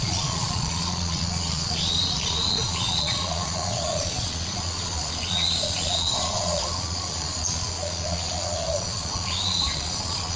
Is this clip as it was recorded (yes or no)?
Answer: no